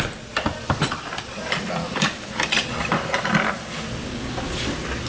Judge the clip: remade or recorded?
recorded